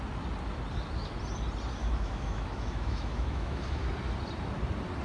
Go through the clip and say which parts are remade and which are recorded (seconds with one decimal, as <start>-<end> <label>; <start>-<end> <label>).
0.0-1.8 recorded; 1.8-3.9 remade; 3.9-5.0 recorded